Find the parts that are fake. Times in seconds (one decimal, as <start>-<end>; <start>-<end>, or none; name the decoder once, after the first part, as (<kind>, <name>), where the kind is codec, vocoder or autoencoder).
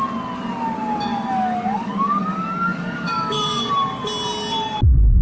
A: 1.1-3.7 (codec, DAC)